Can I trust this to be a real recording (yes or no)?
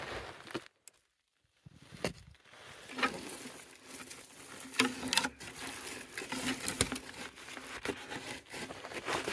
yes